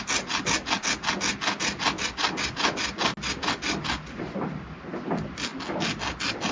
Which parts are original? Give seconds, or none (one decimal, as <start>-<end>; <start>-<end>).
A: 0.0-6.5